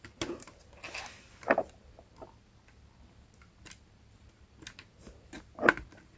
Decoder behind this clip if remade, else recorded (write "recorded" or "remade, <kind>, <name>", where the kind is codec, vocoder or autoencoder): recorded